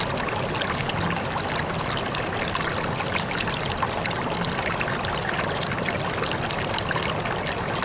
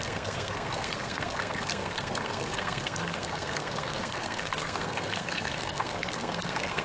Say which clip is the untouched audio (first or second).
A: first